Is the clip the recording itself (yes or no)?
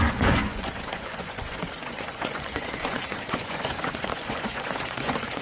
no